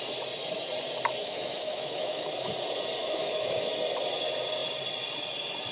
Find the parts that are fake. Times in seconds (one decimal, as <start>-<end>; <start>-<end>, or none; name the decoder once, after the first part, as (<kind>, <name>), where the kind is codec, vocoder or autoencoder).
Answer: 1.2-2.5 (autoencoder, DAC-VAE); 3.0-3.7